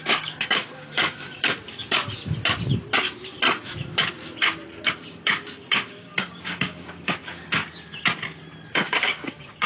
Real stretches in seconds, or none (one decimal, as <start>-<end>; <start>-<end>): 2.2-4.9; 7.6-8.7